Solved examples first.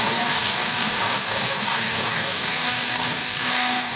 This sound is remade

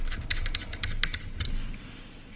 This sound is recorded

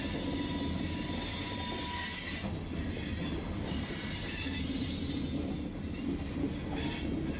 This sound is recorded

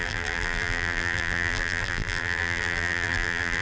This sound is remade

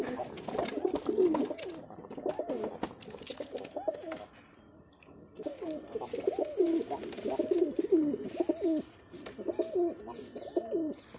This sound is recorded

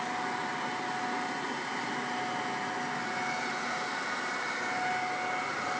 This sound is recorded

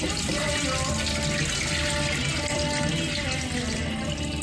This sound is recorded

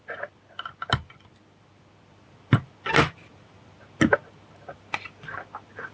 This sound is recorded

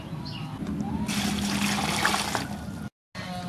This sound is recorded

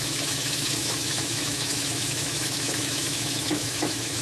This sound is remade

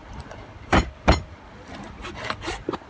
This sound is remade